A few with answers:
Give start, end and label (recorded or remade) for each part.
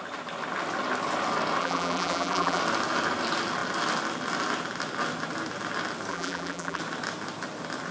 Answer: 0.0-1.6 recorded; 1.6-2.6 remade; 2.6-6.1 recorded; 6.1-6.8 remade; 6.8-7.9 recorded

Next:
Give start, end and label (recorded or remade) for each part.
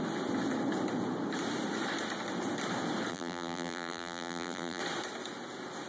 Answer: 0.0-3.1 recorded; 3.1-4.8 remade; 4.8-5.9 recorded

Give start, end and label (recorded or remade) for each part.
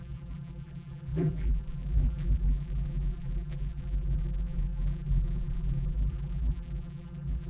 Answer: 0.0-7.5 remade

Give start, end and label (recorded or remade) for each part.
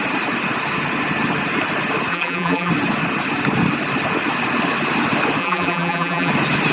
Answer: 0.0-2.1 recorded; 2.1-2.7 remade; 2.7-5.4 recorded; 5.4-6.3 remade; 6.3-6.7 recorded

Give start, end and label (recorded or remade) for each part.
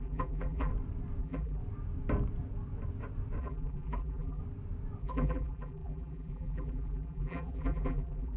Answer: 0.0-0.7 remade; 0.7-1.2 recorded; 1.2-1.6 remade; 1.6-3.4 recorded; 3.4-4.4 remade; 4.4-5.0 recorded; 5.0-8.4 remade